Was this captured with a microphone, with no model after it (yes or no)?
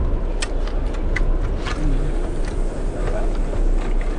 yes